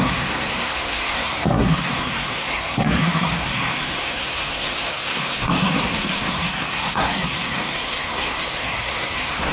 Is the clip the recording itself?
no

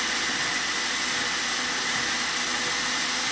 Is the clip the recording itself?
yes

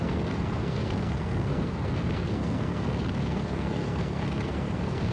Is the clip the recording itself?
no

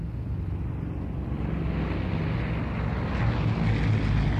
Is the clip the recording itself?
yes